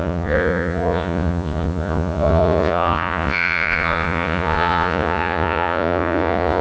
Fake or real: fake